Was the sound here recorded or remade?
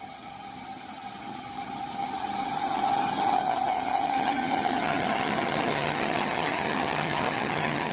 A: remade